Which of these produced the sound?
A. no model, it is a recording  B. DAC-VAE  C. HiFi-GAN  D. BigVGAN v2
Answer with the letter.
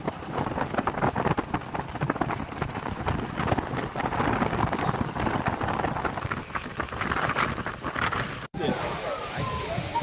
A